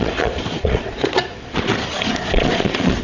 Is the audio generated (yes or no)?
yes